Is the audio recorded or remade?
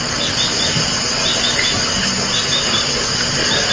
recorded